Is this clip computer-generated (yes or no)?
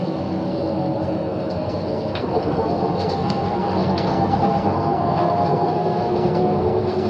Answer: yes